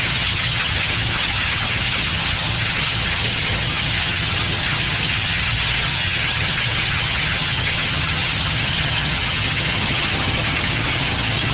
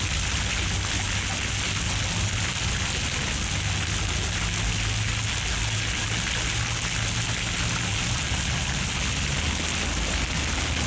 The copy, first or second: first